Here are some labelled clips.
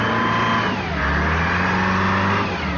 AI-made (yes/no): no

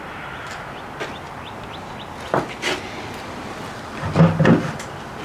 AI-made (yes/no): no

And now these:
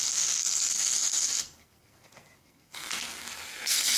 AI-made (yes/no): yes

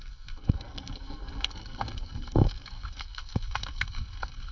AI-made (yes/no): yes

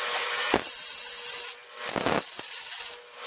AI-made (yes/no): no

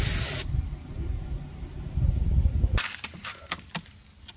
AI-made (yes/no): no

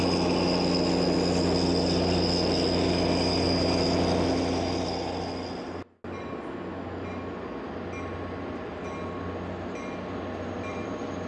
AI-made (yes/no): no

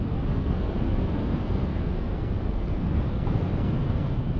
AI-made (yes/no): yes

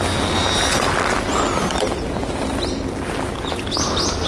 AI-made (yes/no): no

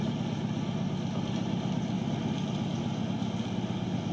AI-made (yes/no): no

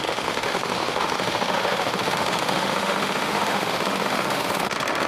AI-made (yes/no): yes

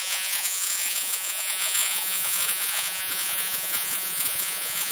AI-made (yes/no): yes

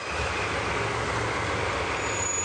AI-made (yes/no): no